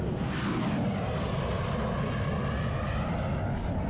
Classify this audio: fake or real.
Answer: real